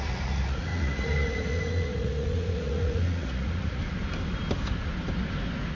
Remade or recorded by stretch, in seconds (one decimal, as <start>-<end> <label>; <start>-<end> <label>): 0.0-3.8 remade; 3.8-5.7 recorded